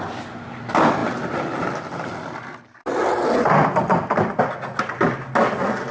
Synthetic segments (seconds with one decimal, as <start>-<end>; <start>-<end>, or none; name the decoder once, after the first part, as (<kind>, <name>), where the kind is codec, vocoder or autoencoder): none